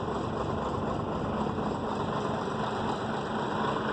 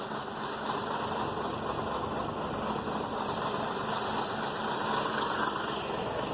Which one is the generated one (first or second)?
first